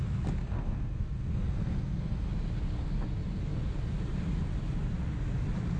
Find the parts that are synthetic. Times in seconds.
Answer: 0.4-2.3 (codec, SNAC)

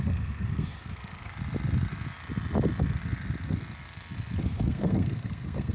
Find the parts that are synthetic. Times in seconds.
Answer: 0.0-1.3 (codec, SNAC); 4.4-5.7

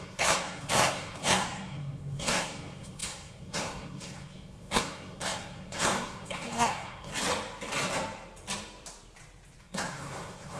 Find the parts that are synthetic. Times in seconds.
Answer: 0.0-7.1 (codec, SNAC); 9.6-10.6